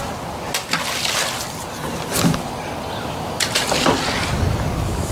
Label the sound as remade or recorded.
recorded